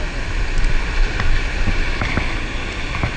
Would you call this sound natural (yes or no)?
yes